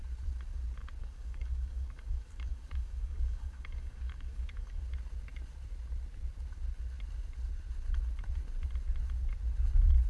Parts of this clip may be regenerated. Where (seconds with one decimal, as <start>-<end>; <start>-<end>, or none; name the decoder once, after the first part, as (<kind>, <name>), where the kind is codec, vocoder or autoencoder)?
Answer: 1.0-4.8 (codec, DAC)